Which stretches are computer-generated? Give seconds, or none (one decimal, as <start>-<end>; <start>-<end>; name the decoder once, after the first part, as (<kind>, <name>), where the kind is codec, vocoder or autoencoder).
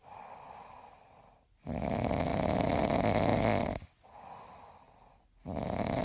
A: 2.3-2.8 (vocoder, BigVGAN v2)